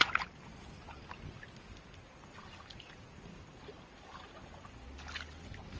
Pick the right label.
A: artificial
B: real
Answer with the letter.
B